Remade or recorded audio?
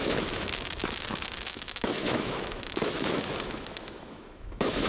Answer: remade